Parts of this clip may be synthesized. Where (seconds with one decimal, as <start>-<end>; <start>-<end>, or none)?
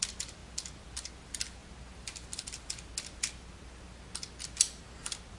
none